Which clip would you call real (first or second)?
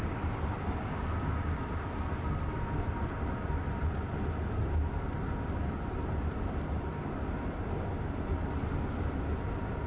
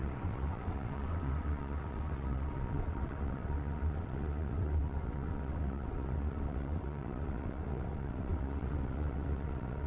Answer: first